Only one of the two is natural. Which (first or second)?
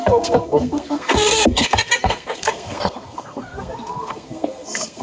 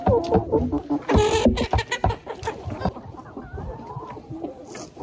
second